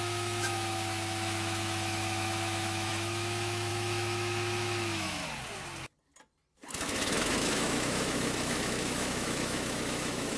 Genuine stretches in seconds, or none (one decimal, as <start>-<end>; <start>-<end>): 5.2-6.8